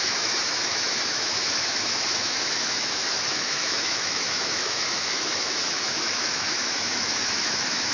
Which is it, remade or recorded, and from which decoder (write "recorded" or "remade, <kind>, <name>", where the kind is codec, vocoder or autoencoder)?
remade, autoencoder, DAC-VAE